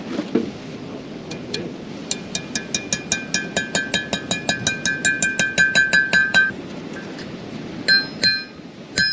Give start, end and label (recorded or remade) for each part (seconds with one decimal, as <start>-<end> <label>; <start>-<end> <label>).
0.0-6.2 recorded; 6.2-7.7 remade; 7.7-9.1 recorded